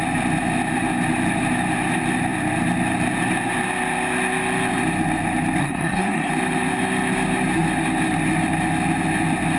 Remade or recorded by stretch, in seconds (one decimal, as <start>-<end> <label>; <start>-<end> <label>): 0.0-5.6 recorded; 5.6-6.3 remade; 6.3-9.6 recorded